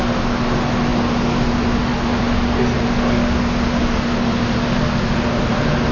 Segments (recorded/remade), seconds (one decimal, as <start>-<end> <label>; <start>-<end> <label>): 0.0-5.9 recorded